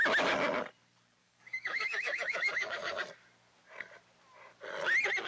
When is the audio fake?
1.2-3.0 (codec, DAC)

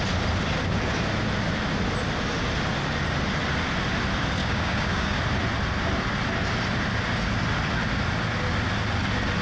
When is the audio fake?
4.4-5.2 (codec, DAC)

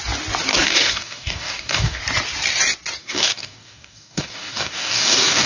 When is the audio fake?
0.5-2.0 (codec, DAC); 3.0-5.5

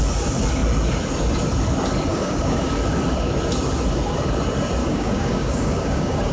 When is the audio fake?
2.1-2.7 (codec, DAC); 4.8-6.3